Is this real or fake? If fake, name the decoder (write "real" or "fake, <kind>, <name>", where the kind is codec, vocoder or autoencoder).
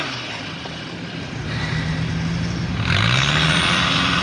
real